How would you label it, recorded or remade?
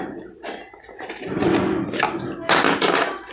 recorded